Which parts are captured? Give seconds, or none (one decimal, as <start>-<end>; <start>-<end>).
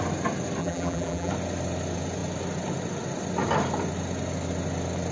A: 0.0-0.6; 1.3-5.1